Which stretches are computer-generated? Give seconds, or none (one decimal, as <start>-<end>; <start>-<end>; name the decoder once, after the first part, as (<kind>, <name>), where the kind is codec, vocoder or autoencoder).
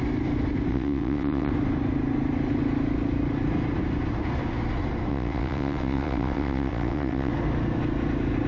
0.7-1.5 (vocoder, WaveNeXt); 5.1-7.3